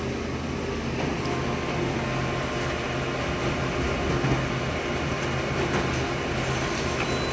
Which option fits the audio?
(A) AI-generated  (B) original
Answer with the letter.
B